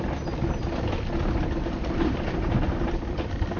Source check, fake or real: real